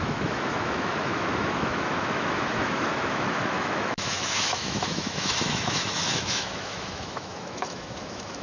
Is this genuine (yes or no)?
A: no